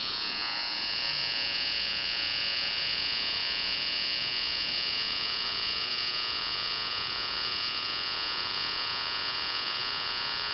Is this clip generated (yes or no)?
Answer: yes